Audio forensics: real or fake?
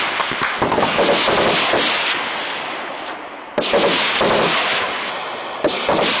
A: real